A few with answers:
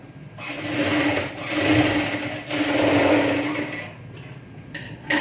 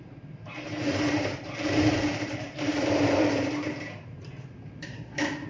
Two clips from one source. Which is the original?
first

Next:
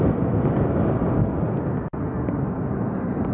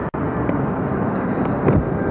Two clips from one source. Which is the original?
first